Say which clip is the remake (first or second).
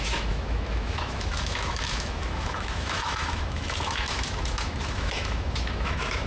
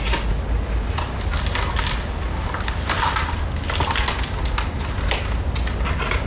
first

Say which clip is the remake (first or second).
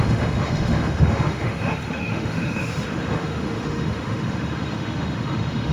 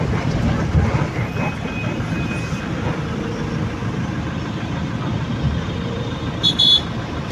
first